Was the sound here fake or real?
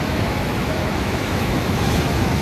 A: fake